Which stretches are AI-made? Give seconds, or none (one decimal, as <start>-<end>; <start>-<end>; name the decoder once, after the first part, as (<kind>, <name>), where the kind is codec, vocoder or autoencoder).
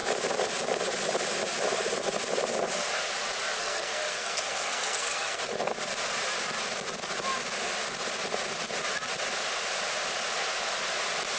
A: 3.6-5.4 (codec, SNAC)